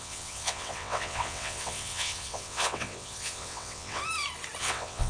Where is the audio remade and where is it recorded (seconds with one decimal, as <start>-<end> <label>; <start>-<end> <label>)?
0.0-4.0 remade; 4.0-4.6 recorded; 4.6-5.1 remade